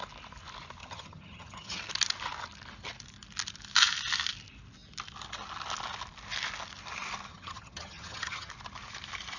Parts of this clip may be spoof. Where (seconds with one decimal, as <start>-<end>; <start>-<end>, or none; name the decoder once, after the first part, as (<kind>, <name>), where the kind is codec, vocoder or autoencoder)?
0.8-1.8 (vocoder, HiFi-GAN); 7.3-8.5